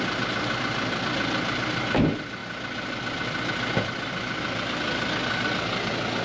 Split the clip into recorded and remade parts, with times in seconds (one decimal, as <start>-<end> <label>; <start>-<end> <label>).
0.0-6.2 recorded